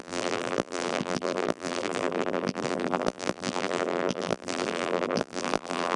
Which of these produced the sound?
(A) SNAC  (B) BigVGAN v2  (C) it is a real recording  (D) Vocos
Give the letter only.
B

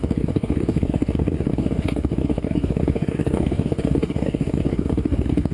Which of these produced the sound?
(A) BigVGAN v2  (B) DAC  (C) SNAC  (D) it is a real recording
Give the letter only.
B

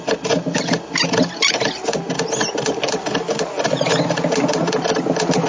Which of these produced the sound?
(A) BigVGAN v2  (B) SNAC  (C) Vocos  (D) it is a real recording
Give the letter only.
D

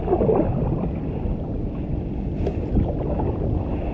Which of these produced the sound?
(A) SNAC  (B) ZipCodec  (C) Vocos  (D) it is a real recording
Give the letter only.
D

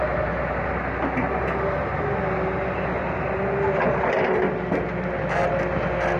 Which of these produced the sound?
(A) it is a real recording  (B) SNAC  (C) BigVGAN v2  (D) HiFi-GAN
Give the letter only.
A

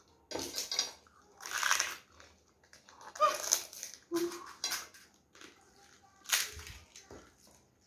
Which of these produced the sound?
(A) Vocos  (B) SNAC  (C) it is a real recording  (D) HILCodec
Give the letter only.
C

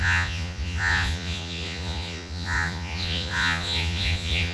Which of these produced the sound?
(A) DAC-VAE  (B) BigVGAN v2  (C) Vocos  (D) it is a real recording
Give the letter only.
C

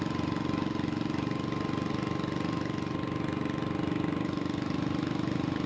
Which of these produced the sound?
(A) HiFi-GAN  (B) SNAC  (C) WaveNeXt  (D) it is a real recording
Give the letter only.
D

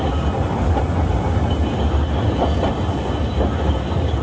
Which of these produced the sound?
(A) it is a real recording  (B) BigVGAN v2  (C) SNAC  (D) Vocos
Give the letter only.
A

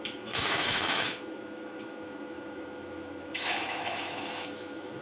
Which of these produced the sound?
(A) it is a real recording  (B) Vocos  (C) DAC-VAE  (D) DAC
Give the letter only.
C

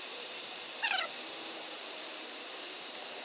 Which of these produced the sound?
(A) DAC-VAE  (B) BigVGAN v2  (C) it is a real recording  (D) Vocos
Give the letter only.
B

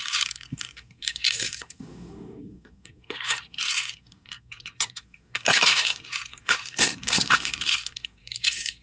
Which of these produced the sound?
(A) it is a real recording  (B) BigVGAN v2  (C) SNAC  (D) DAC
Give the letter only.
C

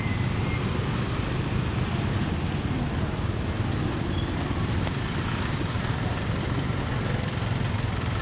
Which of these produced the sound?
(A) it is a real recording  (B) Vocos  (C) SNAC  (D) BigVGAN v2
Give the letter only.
A